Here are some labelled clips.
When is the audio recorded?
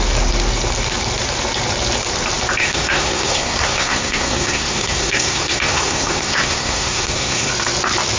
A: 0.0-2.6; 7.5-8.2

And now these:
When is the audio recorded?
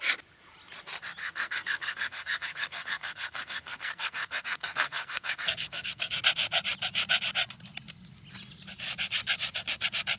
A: 0.0-1.2; 6.2-10.2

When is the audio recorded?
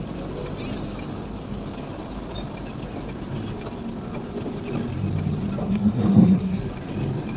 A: 0.0-5.6; 6.7-7.4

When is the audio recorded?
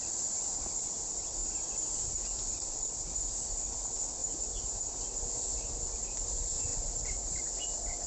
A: 0.0-8.1